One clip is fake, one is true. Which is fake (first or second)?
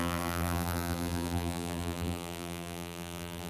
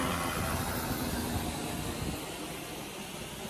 first